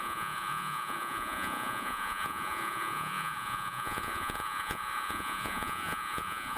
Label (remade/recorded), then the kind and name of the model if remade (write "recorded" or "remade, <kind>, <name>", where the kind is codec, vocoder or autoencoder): remade, vocoder, Vocos